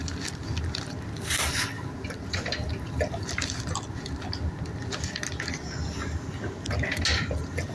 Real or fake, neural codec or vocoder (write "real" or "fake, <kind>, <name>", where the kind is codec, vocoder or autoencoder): real